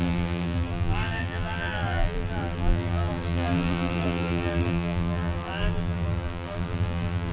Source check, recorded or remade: remade